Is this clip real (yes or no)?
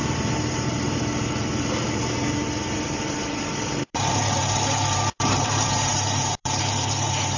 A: no